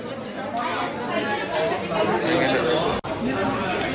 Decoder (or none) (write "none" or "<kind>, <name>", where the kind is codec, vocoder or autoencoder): none